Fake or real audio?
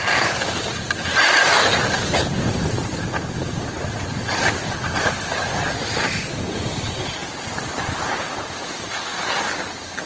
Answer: real